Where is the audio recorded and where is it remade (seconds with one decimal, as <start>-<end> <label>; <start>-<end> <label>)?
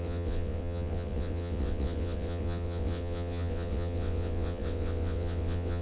0.0-5.8 remade